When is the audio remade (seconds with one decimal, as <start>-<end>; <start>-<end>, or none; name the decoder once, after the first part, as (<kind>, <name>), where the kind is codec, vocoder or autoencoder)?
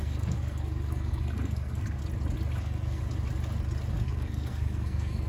0.0-2.0 (codec, SNAC); 2.6-3.0; 3.9-5.3